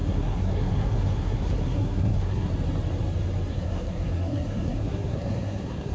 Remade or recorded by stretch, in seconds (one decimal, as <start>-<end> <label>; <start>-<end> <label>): 0.0-2.5 remade; 2.5-3.5 recorded; 3.5-5.9 remade